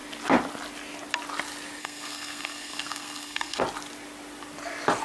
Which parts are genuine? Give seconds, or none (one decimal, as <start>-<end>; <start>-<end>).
0.0-1.8; 3.6-5.0